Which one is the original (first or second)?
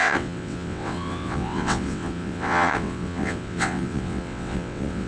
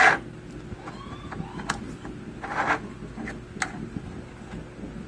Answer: second